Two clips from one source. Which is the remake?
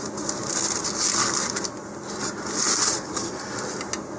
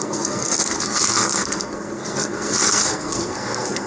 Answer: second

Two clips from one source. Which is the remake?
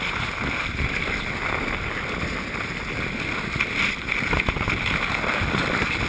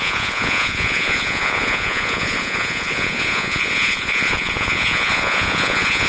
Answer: second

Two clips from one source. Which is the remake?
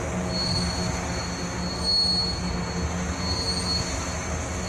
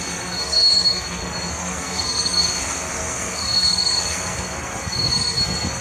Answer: second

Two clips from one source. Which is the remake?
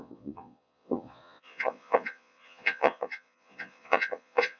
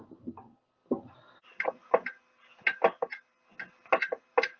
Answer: first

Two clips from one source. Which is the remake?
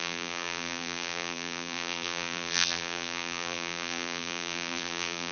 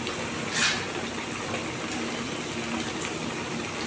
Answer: first